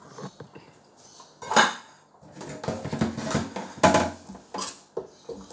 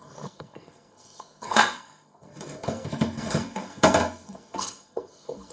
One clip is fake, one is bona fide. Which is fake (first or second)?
second